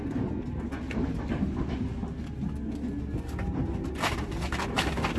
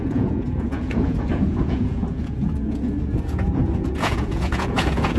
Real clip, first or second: first